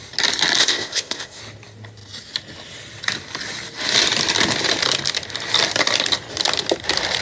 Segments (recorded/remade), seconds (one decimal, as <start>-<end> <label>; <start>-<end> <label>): 0.0-0.6 recorded; 0.6-1.4 remade; 1.4-7.2 recorded